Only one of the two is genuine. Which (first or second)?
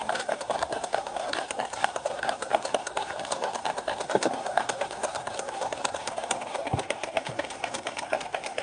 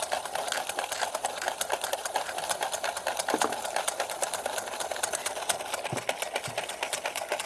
second